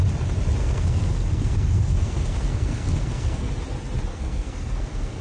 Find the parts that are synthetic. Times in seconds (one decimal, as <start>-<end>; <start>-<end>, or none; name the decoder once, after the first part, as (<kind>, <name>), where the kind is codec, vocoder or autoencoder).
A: 0.6-3.5 (codec, SNAC); 4.1-5.2

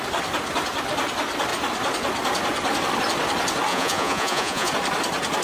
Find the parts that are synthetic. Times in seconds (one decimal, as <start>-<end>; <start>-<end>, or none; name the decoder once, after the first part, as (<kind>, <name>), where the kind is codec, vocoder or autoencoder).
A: 3.7-4.7 (vocoder, Vocos)

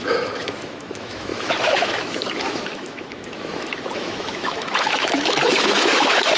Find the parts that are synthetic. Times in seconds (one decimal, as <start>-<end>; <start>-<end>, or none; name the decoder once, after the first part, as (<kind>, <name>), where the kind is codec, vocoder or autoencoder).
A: 0.0-6.4 (autoencoder, DAC-VAE)

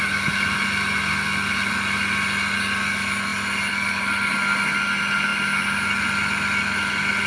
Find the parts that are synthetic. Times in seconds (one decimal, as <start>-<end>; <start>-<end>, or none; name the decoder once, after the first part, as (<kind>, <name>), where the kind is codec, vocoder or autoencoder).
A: none